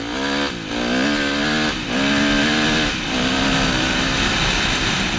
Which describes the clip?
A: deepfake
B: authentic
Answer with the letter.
B